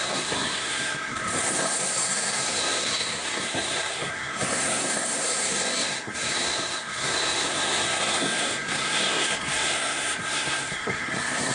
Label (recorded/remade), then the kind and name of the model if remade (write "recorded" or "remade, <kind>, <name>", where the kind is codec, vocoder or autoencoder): remade, codec, SNAC